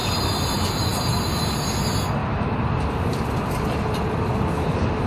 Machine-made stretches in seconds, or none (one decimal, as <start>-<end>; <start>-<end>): none